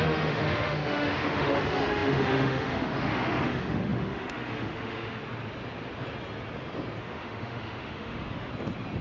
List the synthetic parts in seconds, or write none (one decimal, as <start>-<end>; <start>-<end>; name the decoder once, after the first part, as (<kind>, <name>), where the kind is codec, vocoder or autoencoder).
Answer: 0.0-5.2 (autoencoder, DAC-VAE); 7.0-8.5